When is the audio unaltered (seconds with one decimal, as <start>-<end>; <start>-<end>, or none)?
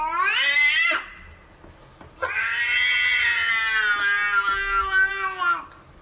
0.0-2.2; 3.5-6.0